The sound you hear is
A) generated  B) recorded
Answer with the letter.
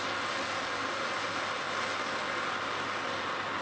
B